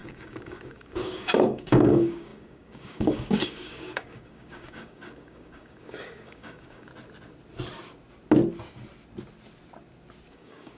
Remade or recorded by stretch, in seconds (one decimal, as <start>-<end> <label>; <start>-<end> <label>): 0.0-6.9 remade; 6.9-10.3 recorded; 10.3-10.8 remade